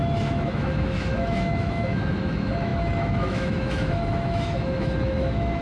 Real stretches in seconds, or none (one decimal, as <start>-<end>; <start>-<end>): none